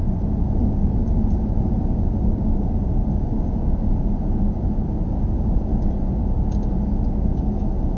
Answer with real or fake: real